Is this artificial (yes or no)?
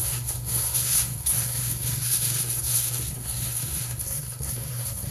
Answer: yes